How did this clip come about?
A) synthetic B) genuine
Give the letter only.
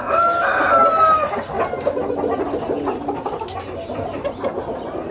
B